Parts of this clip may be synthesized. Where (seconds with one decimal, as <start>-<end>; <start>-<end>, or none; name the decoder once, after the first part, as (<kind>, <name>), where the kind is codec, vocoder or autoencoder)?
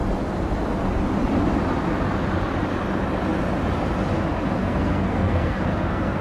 4.6-6.2 (codec, SNAC)